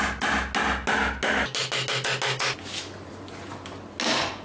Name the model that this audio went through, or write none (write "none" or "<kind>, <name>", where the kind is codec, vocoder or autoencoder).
none